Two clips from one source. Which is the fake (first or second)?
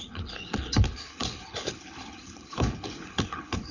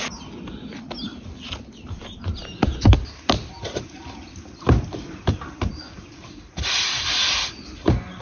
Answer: first